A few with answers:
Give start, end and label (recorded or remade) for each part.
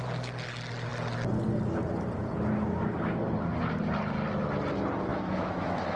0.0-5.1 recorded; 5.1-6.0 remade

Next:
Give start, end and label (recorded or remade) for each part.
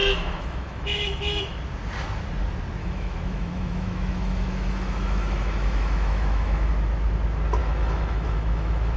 0.0-1.6 remade; 1.6-2.8 recorded; 2.8-6.7 remade; 6.7-7.6 recorded; 7.6-9.0 remade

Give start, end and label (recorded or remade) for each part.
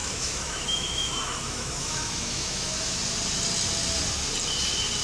0.0-3.0 remade; 3.0-5.0 recorded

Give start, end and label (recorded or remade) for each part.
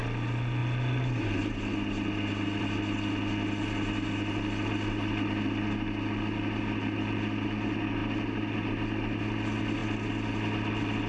0.0-11.1 recorded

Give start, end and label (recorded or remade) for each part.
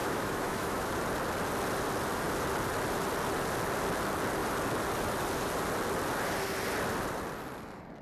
0.0-0.9 remade; 0.9-8.0 recorded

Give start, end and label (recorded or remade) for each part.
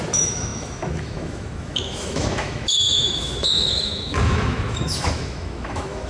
0.0-6.1 remade